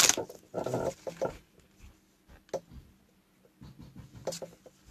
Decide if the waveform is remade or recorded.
recorded